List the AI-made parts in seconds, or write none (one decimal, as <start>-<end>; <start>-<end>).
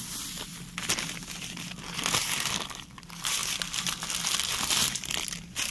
none